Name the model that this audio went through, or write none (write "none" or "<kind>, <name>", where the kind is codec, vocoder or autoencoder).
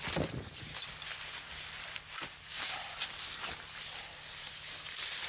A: none